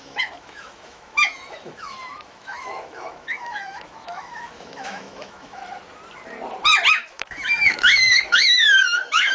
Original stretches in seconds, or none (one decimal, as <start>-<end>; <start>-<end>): 5.6-6.9